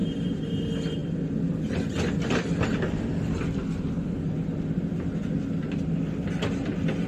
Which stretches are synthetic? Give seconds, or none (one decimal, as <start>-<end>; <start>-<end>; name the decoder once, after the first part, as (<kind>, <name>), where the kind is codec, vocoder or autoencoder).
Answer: none